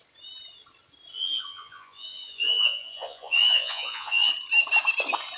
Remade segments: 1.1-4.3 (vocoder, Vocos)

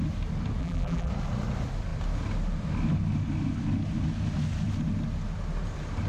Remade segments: 0.6-1.1 (vocoder, BigVGAN v2)

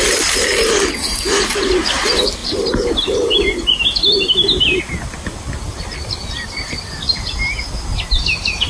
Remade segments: none

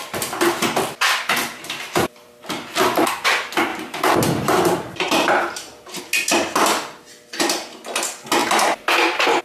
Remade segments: 1.4-2.3 (vocoder, BigVGAN v2); 3.7-6.0